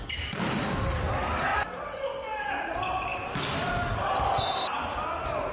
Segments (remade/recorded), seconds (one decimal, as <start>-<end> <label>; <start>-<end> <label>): 0.0-5.5 recorded